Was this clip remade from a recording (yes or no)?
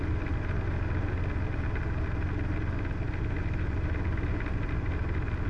no